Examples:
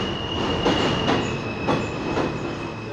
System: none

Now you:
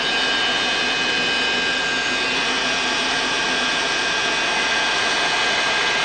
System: none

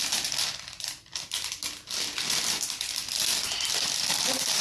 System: none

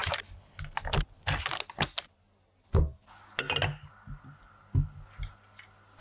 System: none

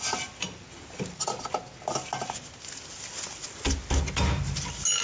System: none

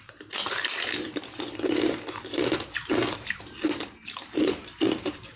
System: vocoder, BigVGAN v2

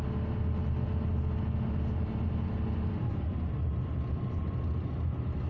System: none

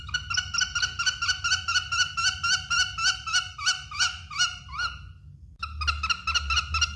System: none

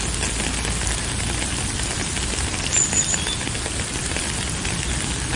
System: none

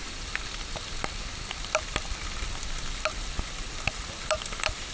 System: none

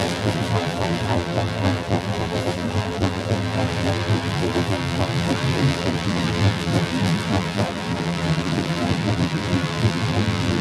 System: vocoder, BigVGAN v2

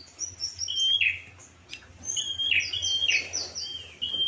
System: none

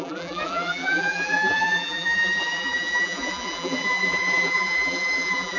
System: vocoder, BigVGAN v2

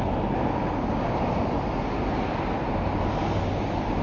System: none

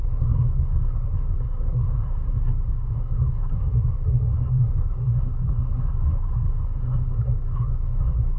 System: codec, SNAC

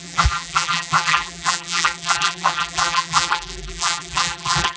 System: vocoder, BigVGAN v2